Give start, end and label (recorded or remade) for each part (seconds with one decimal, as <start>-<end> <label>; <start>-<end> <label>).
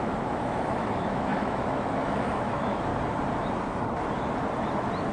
0.0-2.9 remade; 2.9-5.1 recorded